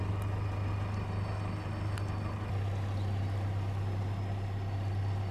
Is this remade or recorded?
recorded